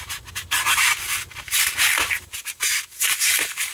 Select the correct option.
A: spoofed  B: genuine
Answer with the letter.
B